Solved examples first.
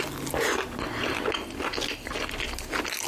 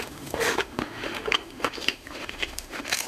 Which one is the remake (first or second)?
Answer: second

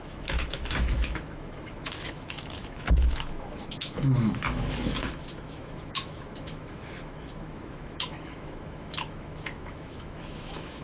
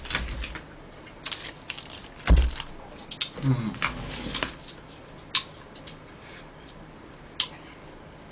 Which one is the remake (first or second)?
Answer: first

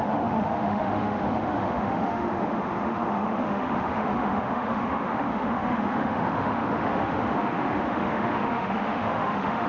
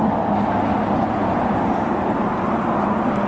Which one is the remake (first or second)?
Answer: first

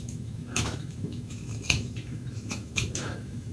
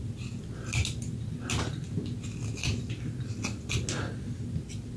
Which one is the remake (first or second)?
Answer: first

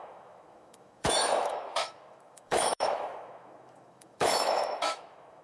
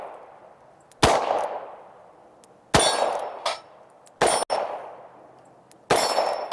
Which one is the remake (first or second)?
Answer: first